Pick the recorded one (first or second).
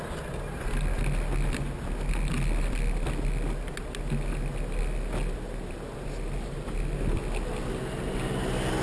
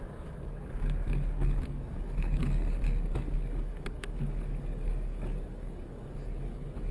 first